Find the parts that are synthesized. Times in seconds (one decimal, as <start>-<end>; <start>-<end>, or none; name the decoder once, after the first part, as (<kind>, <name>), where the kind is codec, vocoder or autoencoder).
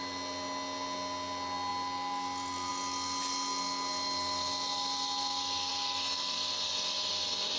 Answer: none